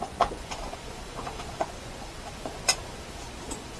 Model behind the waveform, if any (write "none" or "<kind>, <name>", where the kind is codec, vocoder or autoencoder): vocoder, Vocos